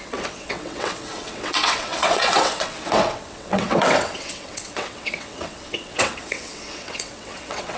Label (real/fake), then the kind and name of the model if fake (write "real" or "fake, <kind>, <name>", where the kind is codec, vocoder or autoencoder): fake, vocoder, WaveNeXt